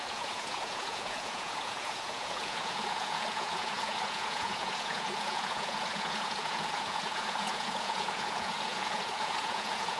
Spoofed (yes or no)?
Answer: yes